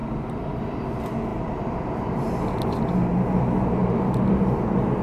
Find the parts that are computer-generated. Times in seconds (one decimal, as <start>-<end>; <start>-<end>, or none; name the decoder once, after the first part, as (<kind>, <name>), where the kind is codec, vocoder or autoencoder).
0.0-0.6 (vocoder, BigVGAN v2); 1.3-2.8; 3.8-4.4